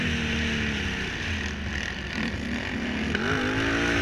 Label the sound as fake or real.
real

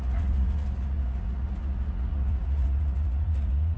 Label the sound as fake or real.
fake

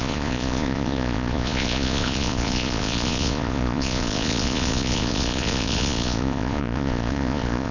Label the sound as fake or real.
fake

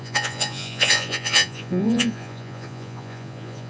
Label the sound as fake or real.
fake